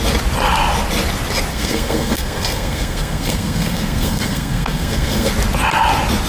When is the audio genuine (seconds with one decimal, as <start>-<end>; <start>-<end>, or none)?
0.0-1.5; 5.3-6.3